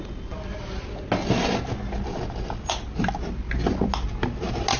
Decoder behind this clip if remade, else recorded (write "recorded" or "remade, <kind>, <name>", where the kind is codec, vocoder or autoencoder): recorded